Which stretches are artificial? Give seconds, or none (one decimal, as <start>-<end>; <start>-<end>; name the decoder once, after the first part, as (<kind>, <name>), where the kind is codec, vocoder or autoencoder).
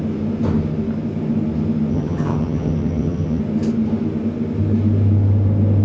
1.9-3.4 (vocoder, HiFi-GAN)